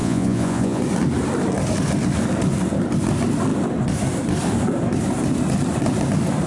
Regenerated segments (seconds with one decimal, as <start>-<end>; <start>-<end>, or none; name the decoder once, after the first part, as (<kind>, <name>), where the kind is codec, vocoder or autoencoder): 0.0-0.8 (vocoder, Vocos)